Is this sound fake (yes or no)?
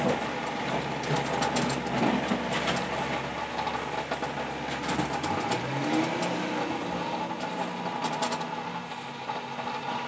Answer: no